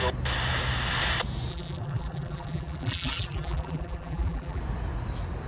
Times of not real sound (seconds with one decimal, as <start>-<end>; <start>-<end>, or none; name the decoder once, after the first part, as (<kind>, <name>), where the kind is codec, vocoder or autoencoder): 1.5-4.6 (vocoder, BigVGAN v2)